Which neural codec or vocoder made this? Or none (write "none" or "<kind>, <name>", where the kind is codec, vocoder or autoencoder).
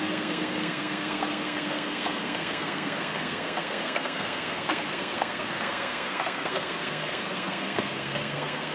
codec, SNAC